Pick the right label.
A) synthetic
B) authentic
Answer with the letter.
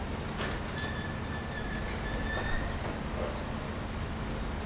B